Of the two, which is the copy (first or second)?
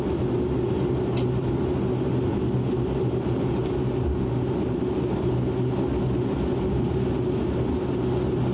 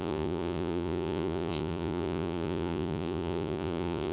second